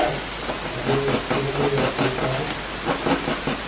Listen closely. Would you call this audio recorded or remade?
recorded